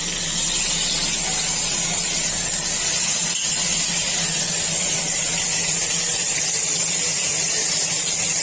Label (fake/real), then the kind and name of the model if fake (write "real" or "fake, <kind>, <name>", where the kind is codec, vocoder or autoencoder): real